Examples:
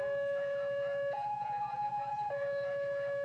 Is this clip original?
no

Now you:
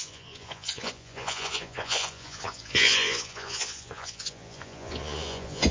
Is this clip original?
no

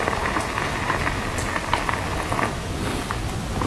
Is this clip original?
yes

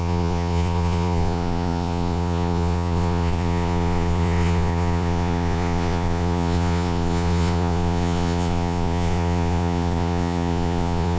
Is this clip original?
no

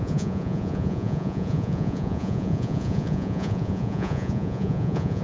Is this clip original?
no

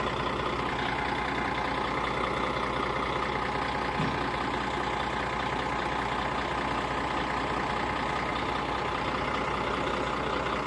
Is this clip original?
yes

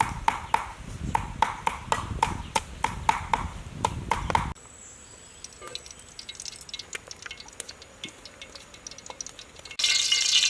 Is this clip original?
yes